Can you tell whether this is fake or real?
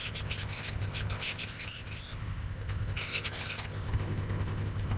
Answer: fake